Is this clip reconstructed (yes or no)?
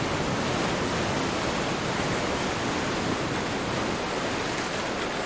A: no